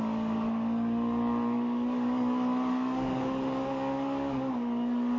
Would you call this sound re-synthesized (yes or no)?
yes